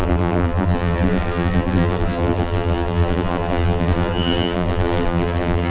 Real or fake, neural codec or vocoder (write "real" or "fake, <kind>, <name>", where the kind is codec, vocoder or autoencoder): fake, vocoder, BigVGAN v2